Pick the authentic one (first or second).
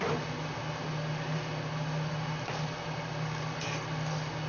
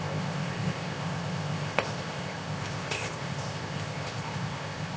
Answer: first